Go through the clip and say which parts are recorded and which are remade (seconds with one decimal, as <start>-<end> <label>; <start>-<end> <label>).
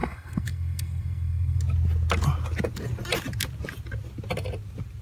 0.0-1.6 remade; 1.6-5.0 recorded